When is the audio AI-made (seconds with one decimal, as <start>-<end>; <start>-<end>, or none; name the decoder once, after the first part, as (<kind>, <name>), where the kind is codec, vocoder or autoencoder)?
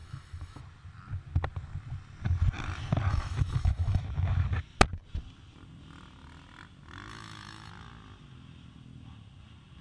0.0-0.6 (autoencoder, DAC-VAE); 3.1-4.0; 7.1-7.7